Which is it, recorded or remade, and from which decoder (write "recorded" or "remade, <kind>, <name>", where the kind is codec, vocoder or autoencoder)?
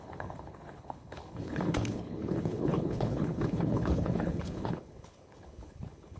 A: remade, codec, HILCodec